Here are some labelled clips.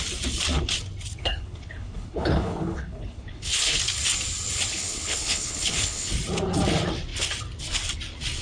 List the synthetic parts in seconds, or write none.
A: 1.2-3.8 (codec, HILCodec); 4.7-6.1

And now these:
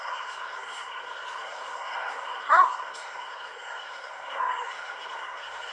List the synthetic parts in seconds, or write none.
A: 0.0-5.7 (codec, SNAC)

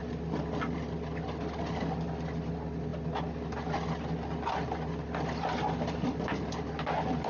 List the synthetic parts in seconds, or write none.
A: none